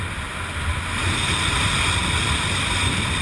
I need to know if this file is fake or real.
real